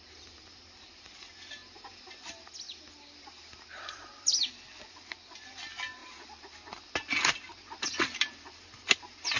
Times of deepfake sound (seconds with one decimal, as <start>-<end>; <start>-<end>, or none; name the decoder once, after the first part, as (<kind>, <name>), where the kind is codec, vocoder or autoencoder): none